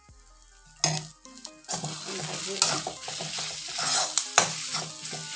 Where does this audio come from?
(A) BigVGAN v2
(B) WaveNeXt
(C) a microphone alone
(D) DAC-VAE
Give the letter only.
C